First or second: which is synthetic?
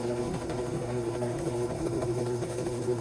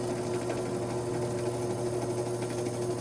first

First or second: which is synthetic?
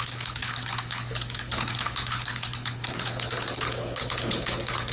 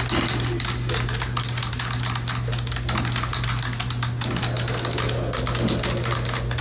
first